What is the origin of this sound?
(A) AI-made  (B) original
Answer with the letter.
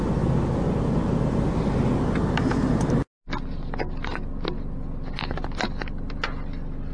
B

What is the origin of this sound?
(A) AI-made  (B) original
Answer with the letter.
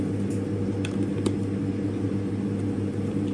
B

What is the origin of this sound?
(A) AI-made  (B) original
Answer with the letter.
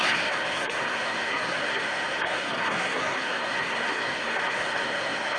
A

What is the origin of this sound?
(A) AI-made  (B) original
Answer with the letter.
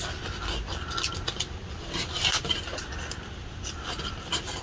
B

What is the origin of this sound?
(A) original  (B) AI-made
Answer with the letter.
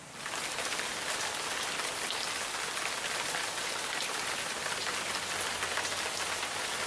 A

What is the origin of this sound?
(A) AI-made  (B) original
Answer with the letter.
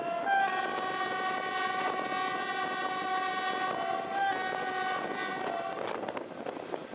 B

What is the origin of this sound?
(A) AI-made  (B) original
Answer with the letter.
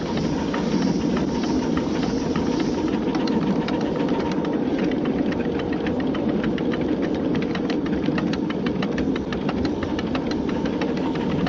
B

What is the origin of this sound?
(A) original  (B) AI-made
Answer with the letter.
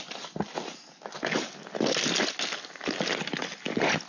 A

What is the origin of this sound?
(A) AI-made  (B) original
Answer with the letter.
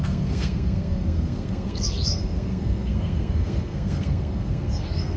A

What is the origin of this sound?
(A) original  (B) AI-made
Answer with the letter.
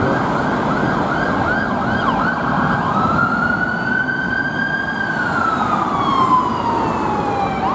A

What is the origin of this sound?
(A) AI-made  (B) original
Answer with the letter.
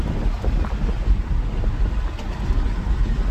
B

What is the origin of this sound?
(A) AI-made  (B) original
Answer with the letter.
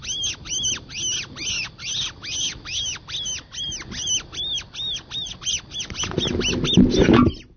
B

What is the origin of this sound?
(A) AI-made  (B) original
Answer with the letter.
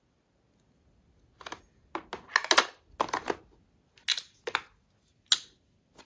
B